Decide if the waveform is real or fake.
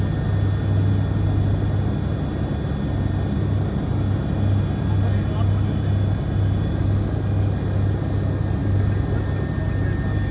real